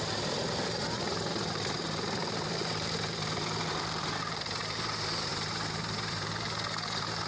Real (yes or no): no